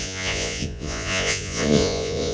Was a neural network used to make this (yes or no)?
yes